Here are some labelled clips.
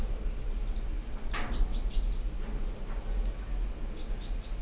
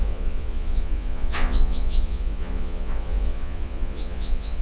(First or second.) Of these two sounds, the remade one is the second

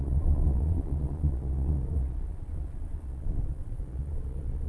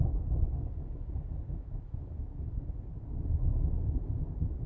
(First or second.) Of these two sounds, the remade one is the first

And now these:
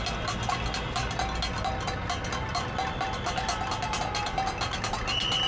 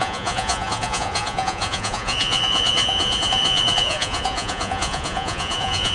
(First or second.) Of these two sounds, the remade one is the second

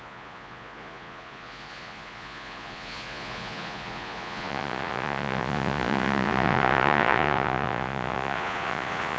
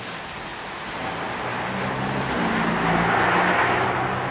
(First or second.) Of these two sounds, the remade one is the first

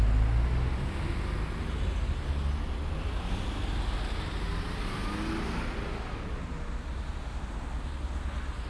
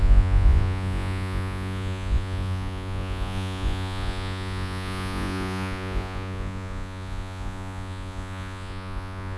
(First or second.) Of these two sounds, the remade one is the second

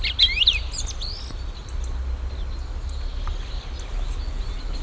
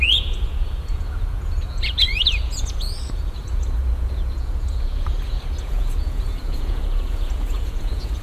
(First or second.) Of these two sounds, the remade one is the second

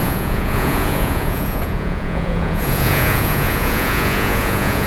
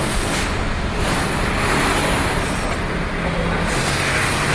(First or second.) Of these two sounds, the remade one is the first